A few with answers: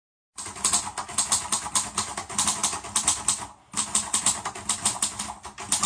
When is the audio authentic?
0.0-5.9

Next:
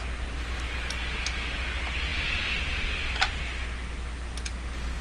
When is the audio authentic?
0.0-2.1; 3.4-5.0

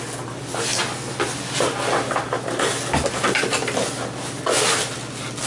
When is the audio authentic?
0.0-5.5

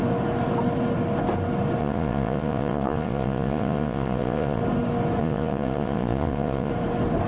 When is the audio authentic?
0.0-1.8; 4.6-5.2; 6.7-7.3

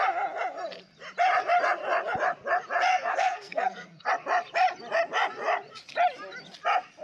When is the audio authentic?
0.0-2.9; 4.1-7.0